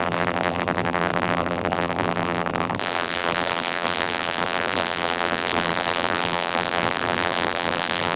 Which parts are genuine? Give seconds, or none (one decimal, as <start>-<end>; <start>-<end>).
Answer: none